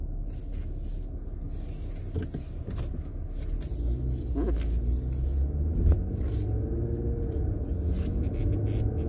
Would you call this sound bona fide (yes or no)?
yes